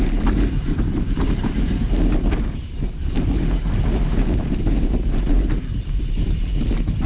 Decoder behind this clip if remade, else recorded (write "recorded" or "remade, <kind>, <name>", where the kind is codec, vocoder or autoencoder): remade, vocoder, BigVGAN v2